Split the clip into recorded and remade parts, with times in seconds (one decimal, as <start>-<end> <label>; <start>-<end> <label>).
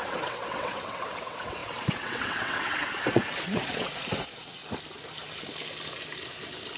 0.0-4.6 remade; 4.6-6.8 recorded